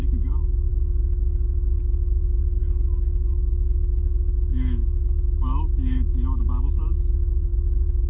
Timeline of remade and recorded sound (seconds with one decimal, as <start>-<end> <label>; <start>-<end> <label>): 0.0-0.7 remade; 0.7-1.8 recorded; 1.8-8.1 remade